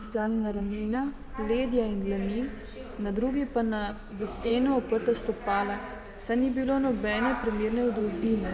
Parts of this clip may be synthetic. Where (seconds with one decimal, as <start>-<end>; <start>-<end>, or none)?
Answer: 0.0-1.2; 3.9-4.5; 8.0-8.5